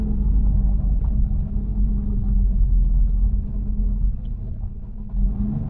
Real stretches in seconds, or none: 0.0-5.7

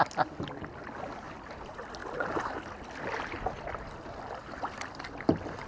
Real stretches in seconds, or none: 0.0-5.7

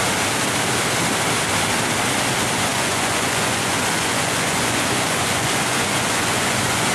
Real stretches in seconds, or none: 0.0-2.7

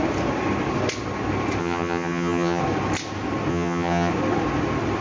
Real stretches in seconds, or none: 0.0-1.6; 2.6-3.5; 4.1-5.0

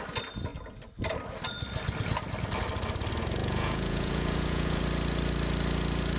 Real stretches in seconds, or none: 0.0-3.4; 4.8-6.2